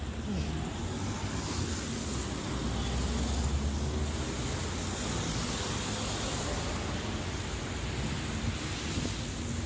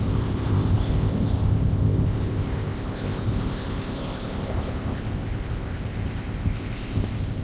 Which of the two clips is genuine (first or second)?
first